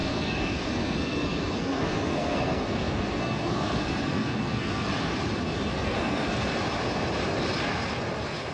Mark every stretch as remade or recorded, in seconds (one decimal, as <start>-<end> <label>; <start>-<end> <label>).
0.0-4.9 remade; 4.9-5.7 recorded; 5.7-6.3 remade; 6.3-8.5 recorded

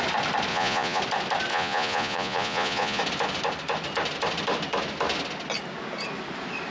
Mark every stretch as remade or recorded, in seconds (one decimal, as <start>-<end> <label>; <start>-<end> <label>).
0.0-0.5 recorded; 0.5-1.0 remade; 1.0-1.5 recorded; 1.5-3.0 remade; 3.0-6.7 recorded

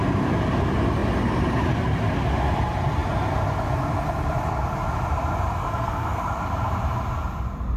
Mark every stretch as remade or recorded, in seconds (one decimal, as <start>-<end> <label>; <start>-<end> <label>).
0.0-5.6 recorded; 5.6-6.2 remade; 6.2-7.8 recorded

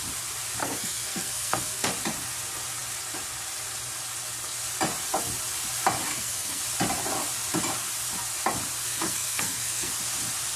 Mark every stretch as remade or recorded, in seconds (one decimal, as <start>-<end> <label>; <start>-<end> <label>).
0.0-0.6 recorded; 0.6-1.9 remade; 1.9-6.1 recorded; 6.1-6.6 remade; 6.6-8.8 recorded; 8.8-9.9 remade; 9.9-10.6 recorded

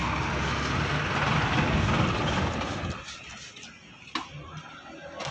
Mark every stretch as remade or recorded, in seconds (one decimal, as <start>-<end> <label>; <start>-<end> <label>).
0.0-5.3 recorded